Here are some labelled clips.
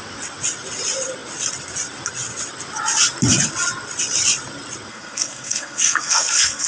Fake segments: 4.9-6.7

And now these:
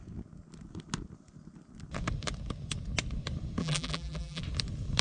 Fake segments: 3.6-4.4

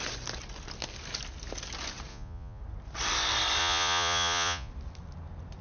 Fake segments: 2.1-2.6; 3.6-4.7

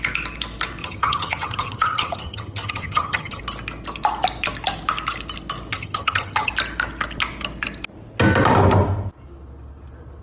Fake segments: 0.8-3.4; 5.7-6.5

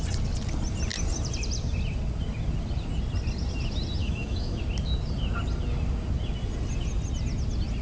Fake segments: 4.0-4.6

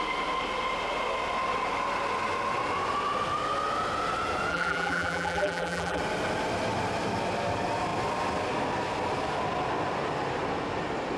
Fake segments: 4.5-6.0

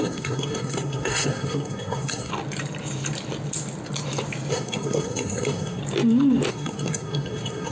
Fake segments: 0.0-2.3; 4.5-5.8; 6.5-7.7

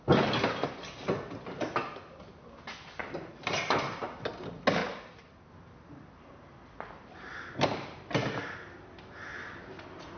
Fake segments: 3.0-4.3; 7.3-8.4